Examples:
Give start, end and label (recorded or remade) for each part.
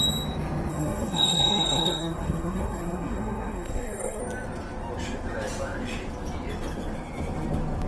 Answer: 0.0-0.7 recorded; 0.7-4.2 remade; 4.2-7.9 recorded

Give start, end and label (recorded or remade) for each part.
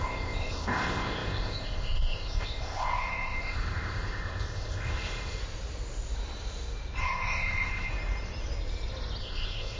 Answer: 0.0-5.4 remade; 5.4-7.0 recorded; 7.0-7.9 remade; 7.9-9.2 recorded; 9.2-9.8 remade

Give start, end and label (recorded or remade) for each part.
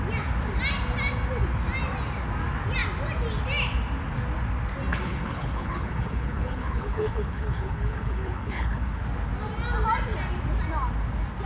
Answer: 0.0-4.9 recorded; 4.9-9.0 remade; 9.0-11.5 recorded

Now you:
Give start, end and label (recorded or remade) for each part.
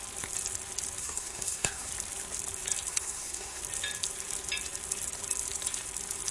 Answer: 0.0-1.0 recorded; 1.0-1.9 remade; 1.9-2.9 recorded; 2.9-3.6 remade; 3.6-6.3 recorded